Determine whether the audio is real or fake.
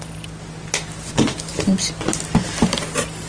real